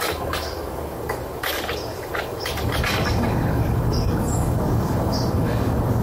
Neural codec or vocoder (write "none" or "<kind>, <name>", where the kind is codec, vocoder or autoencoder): codec, DAC